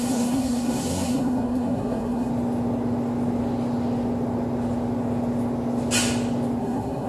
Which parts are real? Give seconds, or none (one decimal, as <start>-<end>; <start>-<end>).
2.3-6.6